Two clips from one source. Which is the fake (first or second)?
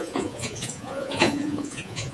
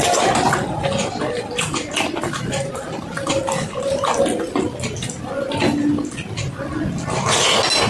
first